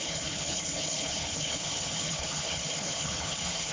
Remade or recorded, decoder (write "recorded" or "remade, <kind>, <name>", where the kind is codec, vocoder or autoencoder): remade, codec, HILCodec